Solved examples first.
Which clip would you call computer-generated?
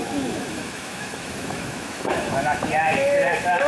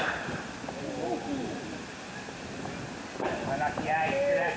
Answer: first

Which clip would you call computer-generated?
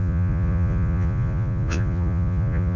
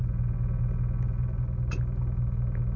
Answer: first